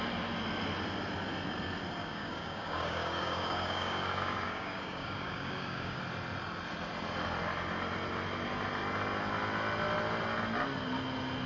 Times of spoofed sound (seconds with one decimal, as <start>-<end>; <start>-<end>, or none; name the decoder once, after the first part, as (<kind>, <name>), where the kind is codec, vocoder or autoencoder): 2.0-6.0 (codec, DAC)

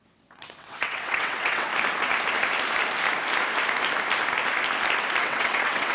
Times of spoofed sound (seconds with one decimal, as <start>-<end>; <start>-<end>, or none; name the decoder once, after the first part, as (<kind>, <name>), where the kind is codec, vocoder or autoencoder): 0.0-1.7 (vocoder, WaveNeXt); 5.2-5.9

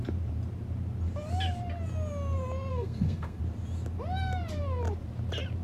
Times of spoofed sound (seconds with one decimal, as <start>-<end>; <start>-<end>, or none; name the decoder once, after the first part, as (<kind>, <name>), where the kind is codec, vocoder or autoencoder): 2.7-3.4 (codec, SNAC)

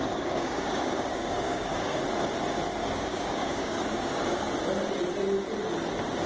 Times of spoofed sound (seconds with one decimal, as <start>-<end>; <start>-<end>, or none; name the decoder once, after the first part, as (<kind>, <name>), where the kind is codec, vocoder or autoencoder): 0.0-2.0 (codec, DAC); 2.8-4.5

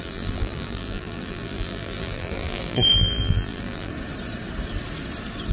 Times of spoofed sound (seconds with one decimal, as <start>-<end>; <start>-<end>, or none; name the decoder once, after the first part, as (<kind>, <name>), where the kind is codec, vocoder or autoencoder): 0.0-3.9 (vocoder, BigVGAN v2)

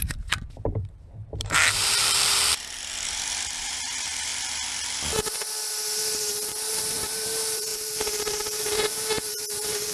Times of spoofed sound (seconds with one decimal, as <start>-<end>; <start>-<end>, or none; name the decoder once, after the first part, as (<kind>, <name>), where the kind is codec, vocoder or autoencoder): 0.0-2.5 (vocoder, BigVGAN v2); 3.6-4.3; 6.9-9.9

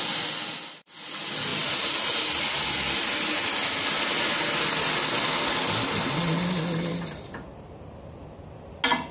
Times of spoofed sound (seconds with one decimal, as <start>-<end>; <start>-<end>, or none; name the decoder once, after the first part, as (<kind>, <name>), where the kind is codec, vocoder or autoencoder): none